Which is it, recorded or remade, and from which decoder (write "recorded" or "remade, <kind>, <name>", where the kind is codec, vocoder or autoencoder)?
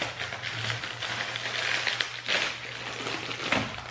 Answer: recorded